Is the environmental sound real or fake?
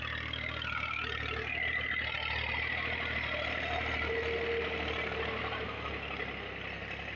real